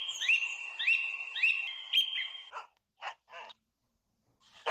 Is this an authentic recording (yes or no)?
no